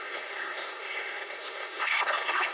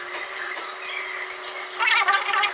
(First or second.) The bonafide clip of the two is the second